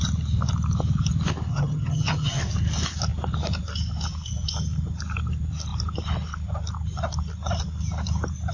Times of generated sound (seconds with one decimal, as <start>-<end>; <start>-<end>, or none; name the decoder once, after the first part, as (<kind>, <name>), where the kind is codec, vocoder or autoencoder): 1.5-2.4 (vocoder, HiFi-GAN)